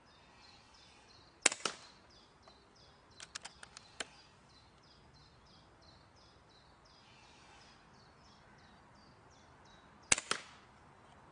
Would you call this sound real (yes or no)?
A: yes